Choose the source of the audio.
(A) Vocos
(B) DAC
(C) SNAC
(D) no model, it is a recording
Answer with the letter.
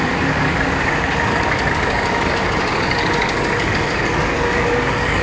B